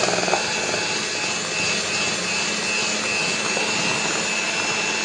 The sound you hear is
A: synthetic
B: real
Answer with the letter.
B